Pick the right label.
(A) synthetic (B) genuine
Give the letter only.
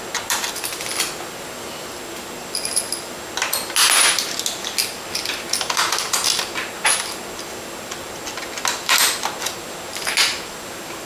B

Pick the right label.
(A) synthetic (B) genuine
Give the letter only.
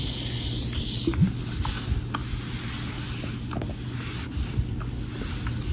B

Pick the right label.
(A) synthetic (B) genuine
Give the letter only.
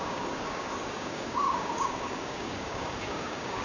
A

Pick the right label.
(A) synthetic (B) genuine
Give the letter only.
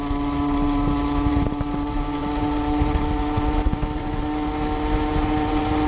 B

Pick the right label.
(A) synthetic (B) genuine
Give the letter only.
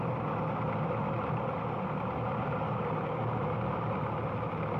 B